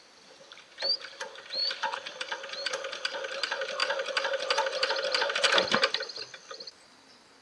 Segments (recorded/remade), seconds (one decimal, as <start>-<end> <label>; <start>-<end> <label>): 0.0-7.4 recorded